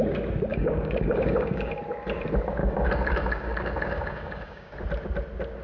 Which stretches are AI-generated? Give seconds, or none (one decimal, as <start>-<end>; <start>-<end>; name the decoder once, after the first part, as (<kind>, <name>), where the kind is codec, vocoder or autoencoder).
0.5-1.7 (codec, DAC); 2.6-4.7